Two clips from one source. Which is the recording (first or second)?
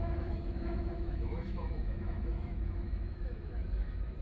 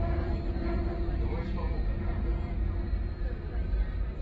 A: second